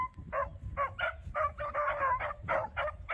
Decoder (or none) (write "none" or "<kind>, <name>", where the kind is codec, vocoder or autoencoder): none